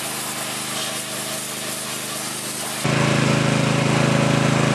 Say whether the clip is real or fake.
real